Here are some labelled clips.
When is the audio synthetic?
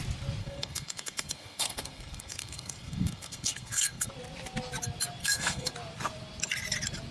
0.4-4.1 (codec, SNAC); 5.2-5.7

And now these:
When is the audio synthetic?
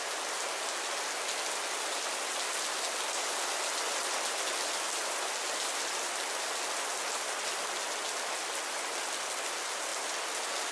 none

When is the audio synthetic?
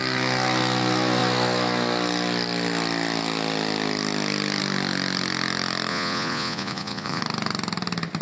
5.9-7.2 (vocoder, Vocos)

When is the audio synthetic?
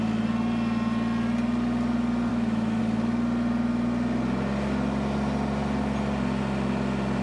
2.3-2.8 (autoencoder, DAC-VAE)